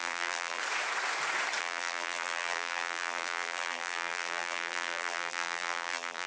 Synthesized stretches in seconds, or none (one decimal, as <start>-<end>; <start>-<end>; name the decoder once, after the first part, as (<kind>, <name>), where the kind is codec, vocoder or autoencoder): 0.0-0.6 (vocoder, BigVGAN v2); 1.6-6.3